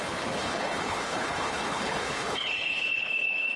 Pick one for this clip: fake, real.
fake